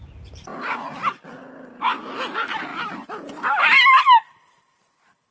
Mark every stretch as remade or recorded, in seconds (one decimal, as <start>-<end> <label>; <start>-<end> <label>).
0.0-2.7 recorded; 2.7-4.6 remade; 4.6-5.3 recorded